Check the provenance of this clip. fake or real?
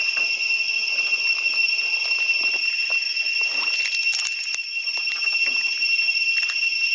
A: real